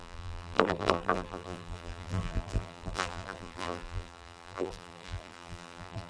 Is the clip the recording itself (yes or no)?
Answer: no